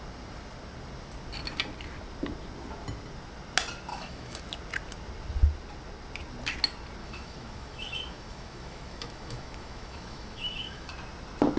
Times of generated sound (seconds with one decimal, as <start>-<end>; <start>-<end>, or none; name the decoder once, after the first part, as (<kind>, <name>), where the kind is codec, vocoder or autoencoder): 3.9-4.4 (autoencoder, DAC-VAE); 7.0-10.9